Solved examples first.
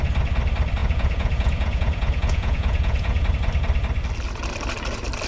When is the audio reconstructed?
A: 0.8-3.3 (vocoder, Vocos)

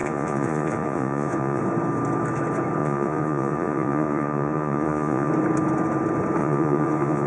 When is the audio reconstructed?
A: 0.0-1.6 (vocoder, Vocos); 2.8-5.3; 6.4-7.3

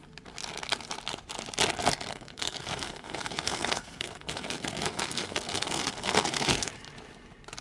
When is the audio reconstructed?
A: 2.1-6.7 (codec, SNAC)

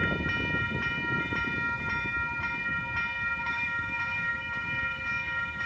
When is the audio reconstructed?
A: 3.4-5.7 (codec, DAC)

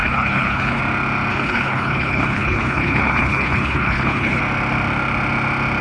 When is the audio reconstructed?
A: 0.0-0.8 (codec, HILCodec); 1.3-4.4